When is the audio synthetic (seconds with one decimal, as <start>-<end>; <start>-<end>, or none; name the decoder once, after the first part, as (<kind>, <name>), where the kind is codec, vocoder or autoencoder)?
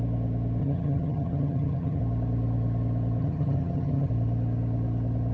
0.6-2.0 (vocoder, HiFi-GAN); 3.2-4.1